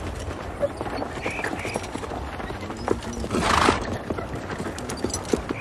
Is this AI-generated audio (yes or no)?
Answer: no